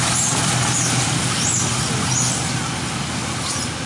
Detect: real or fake real